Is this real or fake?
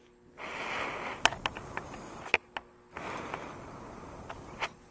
real